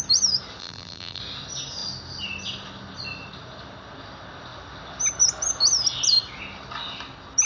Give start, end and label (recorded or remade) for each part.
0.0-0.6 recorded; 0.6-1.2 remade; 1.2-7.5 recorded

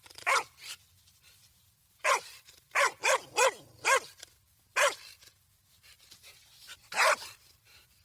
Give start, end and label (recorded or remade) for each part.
0.0-3.0 remade; 3.0-6.5 recorded; 6.5-8.0 remade

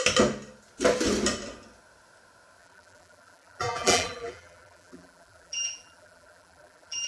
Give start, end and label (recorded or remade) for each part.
0.0-2.6 recorded; 2.6-7.1 remade

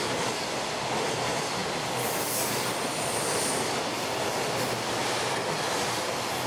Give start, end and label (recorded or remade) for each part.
0.0-6.5 recorded